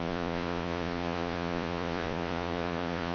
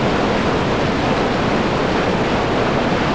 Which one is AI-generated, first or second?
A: first